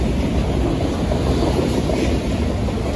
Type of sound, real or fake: real